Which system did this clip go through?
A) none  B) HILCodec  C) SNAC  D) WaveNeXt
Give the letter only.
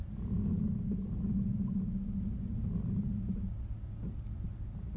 A